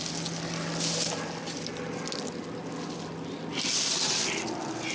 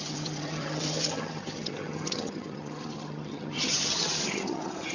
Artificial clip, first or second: second